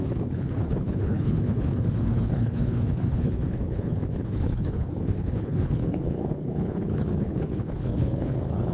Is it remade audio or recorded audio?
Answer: remade